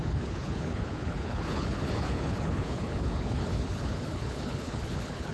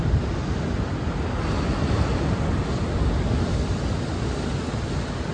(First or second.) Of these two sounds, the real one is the second